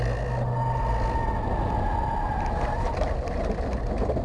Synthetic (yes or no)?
no